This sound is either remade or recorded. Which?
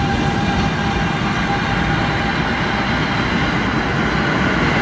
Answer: recorded